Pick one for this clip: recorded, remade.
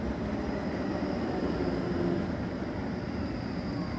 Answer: recorded